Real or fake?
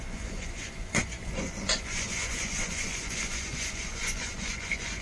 fake